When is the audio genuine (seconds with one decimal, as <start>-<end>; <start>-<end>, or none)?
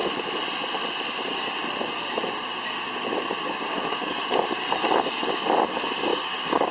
0.0-3.4; 4.1-6.1